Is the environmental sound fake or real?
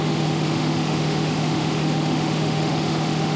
fake